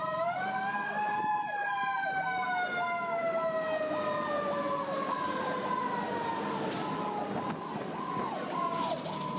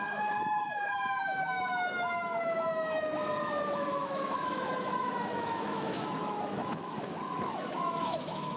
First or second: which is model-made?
second